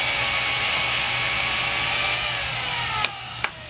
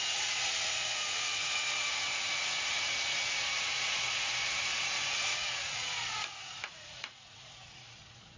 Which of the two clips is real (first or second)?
first